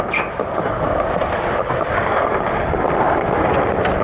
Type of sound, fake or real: real